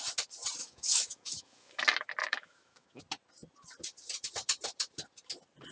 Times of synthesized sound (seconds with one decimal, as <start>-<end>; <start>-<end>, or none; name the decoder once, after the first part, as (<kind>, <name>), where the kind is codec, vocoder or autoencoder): 0.6-1.8 (autoencoder, DAC-VAE); 2.2-3.0